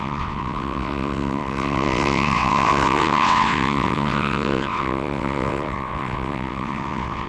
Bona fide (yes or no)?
no